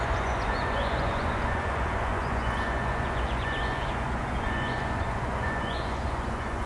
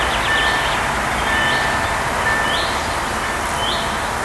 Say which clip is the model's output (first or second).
first